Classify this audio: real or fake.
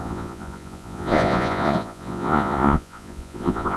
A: fake